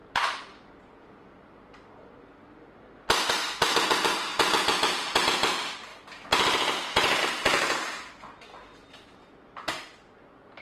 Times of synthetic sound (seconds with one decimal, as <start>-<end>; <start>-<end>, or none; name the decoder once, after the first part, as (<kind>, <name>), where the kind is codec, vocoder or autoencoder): none